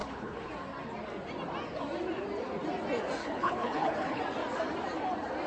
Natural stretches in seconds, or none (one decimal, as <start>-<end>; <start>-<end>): 0.5-3.2; 4.2-5.5